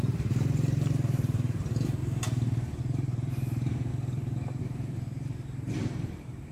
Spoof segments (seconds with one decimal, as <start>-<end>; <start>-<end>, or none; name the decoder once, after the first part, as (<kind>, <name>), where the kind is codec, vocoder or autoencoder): 0.0-2.0 (vocoder, BigVGAN v2); 2.8-3.9; 4.6-6.5